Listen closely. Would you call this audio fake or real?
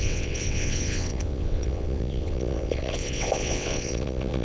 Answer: fake